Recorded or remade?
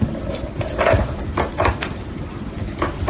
recorded